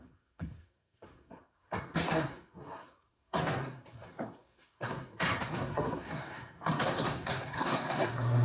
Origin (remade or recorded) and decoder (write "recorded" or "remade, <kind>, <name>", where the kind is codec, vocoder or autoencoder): remade, codec, SNAC